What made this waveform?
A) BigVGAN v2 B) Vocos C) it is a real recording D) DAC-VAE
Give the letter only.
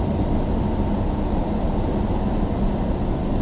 C